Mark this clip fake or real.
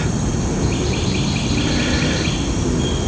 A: real